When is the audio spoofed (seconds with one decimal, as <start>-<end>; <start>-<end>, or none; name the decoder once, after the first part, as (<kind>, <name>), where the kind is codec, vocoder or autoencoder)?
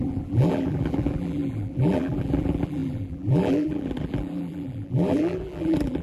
0.0-6.0 (vocoder, BigVGAN v2)